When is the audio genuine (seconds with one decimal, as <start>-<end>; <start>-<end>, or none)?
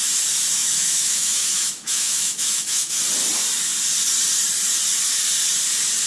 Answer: 0.0-0.6; 3.0-6.1